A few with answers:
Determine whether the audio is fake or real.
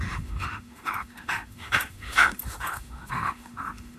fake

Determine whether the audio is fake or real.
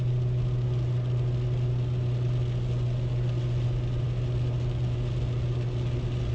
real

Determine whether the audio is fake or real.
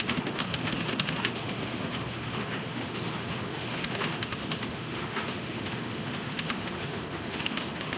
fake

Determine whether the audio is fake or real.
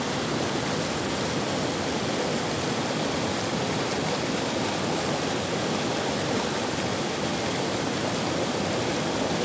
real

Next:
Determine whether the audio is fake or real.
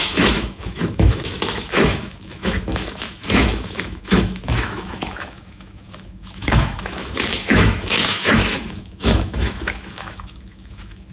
fake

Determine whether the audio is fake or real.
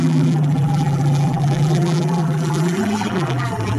fake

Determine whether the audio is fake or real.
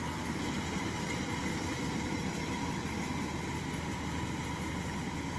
real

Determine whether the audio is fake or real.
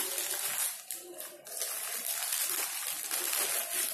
real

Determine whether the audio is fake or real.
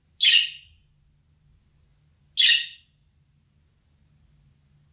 real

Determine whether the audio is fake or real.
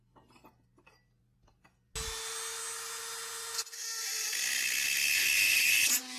real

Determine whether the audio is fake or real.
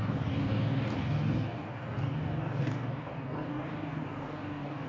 fake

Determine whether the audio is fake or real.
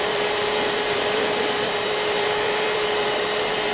fake